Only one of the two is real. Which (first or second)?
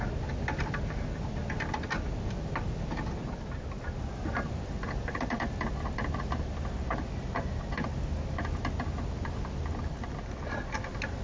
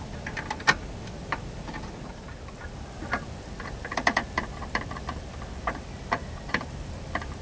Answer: first